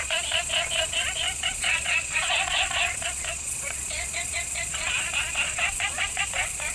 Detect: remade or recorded remade